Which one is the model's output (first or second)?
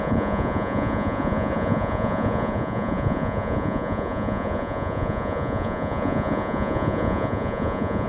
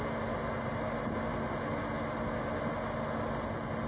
first